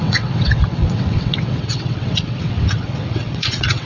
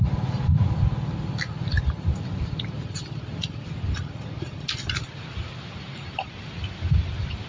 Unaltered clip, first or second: second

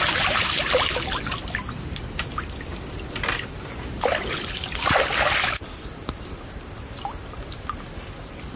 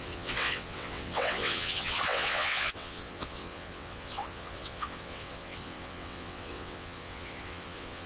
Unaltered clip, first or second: first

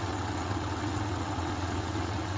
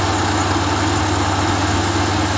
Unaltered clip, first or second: second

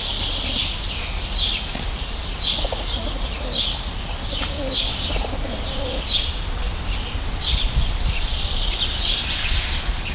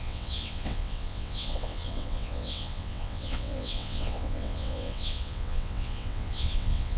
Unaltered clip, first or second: first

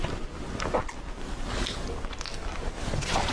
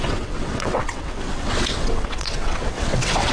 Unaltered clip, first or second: first